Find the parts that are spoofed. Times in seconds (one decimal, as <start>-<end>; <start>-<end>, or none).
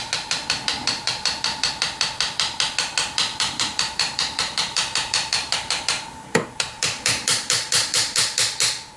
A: 0.8-1.7; 3.3-8.4